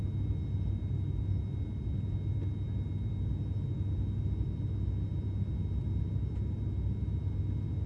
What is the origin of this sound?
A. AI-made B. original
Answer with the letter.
B